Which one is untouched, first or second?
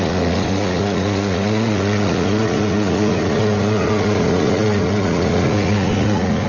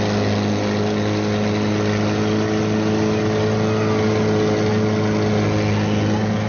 second